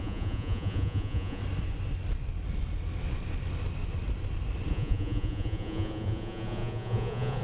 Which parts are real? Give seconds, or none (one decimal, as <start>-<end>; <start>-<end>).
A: 1.4-4.7